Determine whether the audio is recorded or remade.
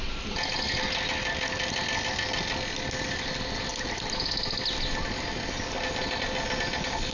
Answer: recorded